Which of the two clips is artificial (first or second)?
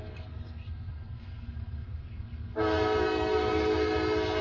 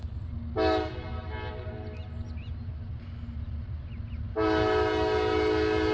first